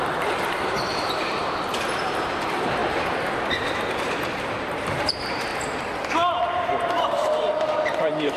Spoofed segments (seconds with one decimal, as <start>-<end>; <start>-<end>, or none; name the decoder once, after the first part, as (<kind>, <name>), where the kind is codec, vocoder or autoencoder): 0.0-5.5 (vocoder, BigVGAN v2); 6.4-8.4